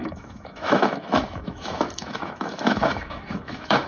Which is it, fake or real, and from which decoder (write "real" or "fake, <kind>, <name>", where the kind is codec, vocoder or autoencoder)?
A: fake, autoencoder, DAC-VAE